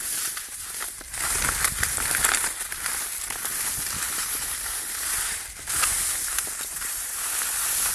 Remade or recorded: recorded